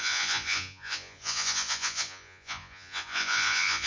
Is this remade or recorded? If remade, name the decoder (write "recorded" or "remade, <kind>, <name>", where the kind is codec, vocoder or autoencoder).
remade, vocoder, Vocos